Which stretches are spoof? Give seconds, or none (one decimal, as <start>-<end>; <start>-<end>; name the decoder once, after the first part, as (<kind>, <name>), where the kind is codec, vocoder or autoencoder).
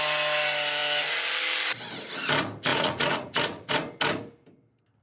2.7-3.7 (vocoder, Vocos)